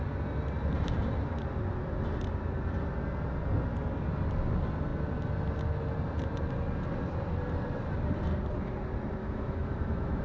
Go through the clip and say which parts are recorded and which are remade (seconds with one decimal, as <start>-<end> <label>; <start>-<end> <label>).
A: 0.0-9.2 recorded; 9.2-10.2 remade